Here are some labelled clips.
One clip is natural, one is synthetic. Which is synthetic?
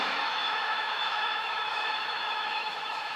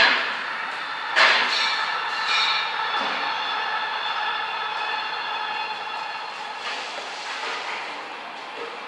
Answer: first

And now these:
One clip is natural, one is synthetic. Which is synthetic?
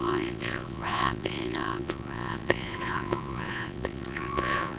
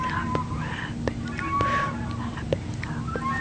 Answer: first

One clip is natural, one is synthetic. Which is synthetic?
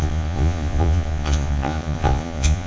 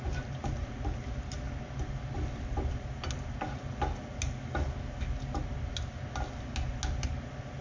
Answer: first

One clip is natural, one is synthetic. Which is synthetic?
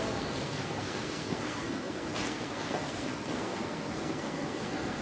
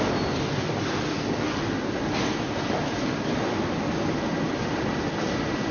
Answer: first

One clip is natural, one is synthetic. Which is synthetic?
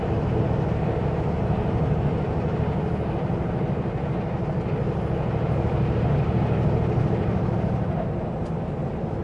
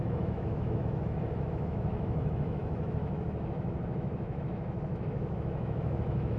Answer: second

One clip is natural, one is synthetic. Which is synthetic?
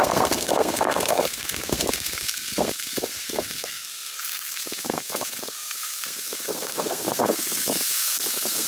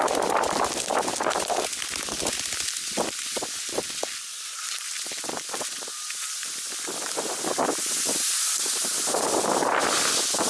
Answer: first